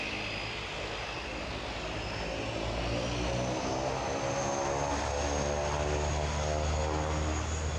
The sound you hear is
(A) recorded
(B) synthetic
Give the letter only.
A